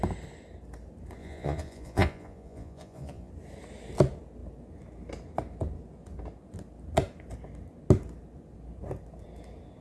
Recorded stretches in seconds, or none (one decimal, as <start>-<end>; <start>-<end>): 0.0-1.2; 3.3-9.8